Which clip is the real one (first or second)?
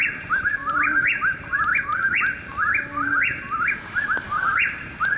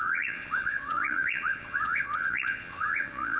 first